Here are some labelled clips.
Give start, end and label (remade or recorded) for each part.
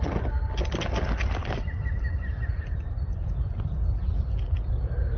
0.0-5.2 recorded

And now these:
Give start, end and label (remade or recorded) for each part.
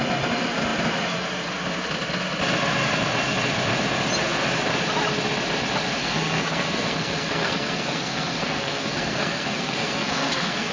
0.0-6.0 recorded; 6.0-10.7 remade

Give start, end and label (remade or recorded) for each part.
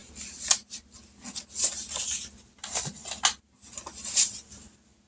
0.0-2.5 recorded; 2.5-3.0 remade; 3.0-5.1 recorded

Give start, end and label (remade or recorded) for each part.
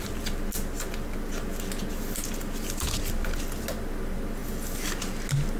0.0-5.6 recorded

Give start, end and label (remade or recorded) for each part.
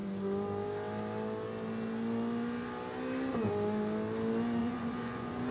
0.0-4.6 recorded; 4.6-5.5 remade